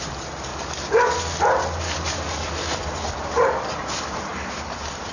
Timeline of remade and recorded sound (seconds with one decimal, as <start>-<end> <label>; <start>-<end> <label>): 0.0-0.5 remade; 0.5-3.1 recorded; 3.1-5.1 remade